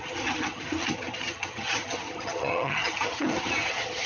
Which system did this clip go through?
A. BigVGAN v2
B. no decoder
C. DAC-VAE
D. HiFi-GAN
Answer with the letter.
D